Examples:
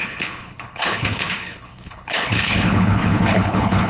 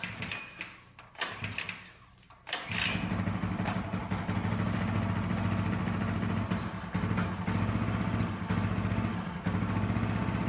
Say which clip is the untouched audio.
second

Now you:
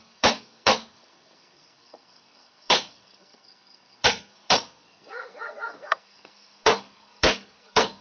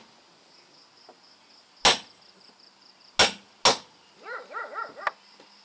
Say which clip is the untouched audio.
second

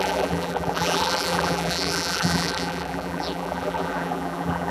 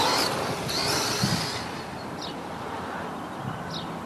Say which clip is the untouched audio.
second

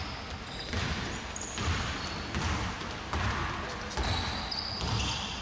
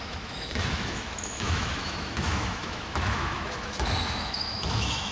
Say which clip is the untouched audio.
first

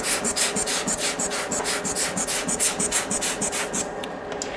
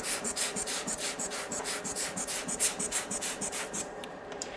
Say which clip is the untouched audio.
first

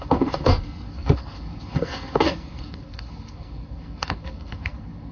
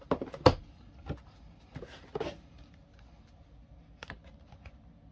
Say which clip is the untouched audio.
second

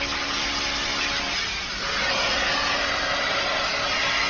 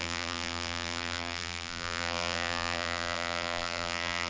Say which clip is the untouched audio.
first